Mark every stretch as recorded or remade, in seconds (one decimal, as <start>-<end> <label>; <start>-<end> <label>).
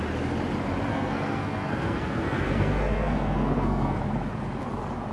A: 0.0-0.9 recorded; 0.9-4.0 remade; 4.0-5.1 recorded